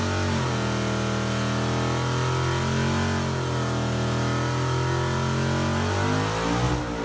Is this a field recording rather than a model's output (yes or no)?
yes